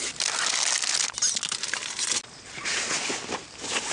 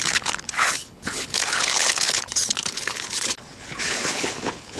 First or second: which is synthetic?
second